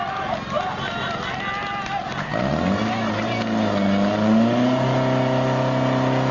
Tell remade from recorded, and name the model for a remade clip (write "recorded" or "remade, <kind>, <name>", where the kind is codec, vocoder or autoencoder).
recorded